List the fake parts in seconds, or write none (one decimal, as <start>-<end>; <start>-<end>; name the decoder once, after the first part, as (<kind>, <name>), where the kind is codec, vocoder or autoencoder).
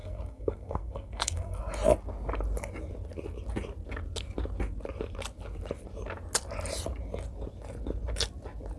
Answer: 0.0-1.6 (codec, SNAC)